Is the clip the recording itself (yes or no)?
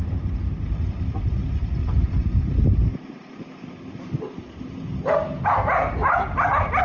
yes